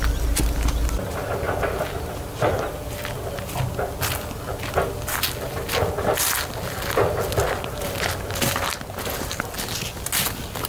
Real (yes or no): yes